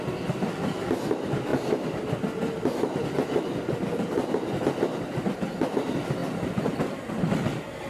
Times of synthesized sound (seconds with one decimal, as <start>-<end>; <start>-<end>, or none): none